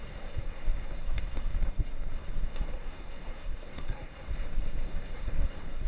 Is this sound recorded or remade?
remade